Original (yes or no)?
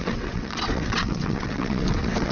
no